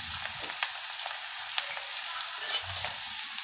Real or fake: real